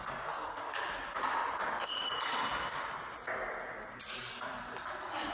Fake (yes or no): no